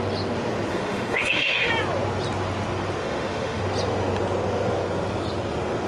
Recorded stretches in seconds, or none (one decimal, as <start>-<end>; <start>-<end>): 0.0-0.7; 1.7-3.0; 3.6-5.9